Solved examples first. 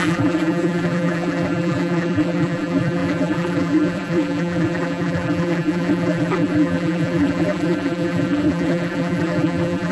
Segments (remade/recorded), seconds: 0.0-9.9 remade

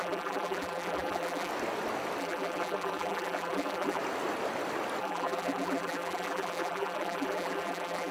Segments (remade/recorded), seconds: 0.0-1.5 remade; 1.5-2.2 recorded; 2.2-4.0 remade; 4.0-5.0 recorded; 5.0-8.1 remade

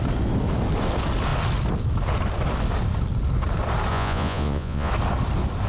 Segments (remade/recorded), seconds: 0.0-3.9 recorded; 3.9-4.9 remade; 4.9-5.7 recorded